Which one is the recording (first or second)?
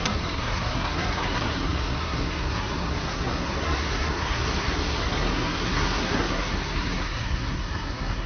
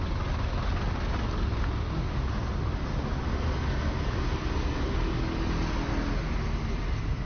second